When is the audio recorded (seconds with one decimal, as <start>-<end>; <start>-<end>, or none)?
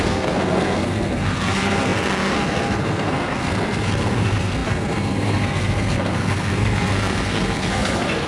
none